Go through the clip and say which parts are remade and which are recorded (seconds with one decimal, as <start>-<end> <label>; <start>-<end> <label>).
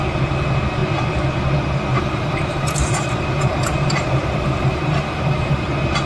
0.0-1.9 recorded; 1.9-5.6 remade; 5.6-6.1 recorded